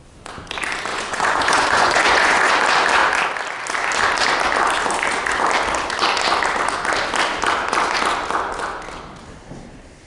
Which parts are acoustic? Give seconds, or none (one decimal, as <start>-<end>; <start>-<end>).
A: 0.0-0.9; 2.5-10.1